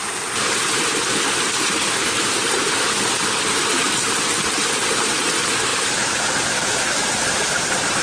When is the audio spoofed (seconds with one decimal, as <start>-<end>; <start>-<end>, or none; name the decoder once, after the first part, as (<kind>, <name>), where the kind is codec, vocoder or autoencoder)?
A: none

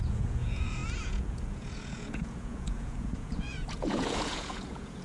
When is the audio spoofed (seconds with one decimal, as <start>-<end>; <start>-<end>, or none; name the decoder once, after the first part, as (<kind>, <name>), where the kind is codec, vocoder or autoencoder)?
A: 0.0-5.0 (vocoder, Vocos)

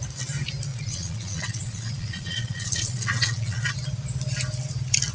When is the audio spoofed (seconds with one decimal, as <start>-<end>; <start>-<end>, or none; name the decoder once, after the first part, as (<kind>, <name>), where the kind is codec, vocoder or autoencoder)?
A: 0.7-3.7 (vocoder, Vocos)

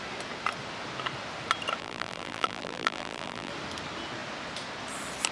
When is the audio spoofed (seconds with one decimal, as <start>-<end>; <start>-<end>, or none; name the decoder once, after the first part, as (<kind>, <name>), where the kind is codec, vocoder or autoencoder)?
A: 1.8-3.5 (vocoder, BigVGAN v2)